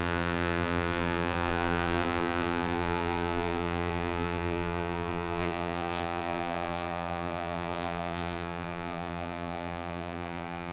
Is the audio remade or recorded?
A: remade